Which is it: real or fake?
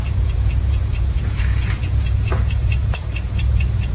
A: fake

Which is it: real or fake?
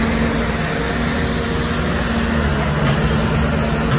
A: real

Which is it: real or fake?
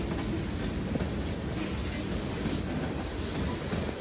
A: real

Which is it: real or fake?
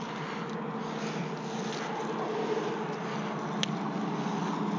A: real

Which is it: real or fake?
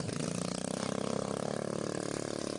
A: real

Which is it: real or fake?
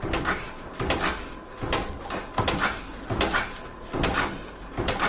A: real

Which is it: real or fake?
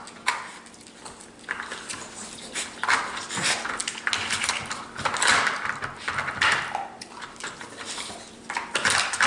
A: real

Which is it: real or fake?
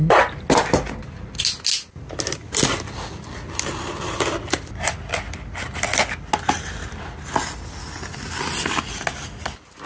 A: real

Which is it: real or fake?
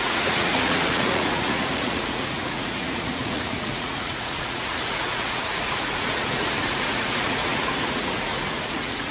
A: fake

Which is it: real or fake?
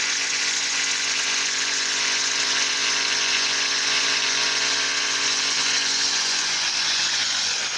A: fake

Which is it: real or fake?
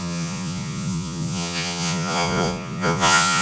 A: fake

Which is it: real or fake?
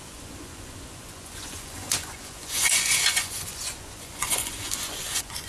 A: fake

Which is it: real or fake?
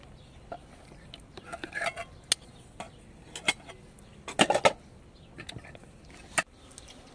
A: real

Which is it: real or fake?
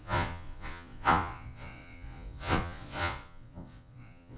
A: fake